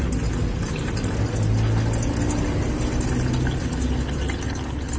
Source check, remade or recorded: recorded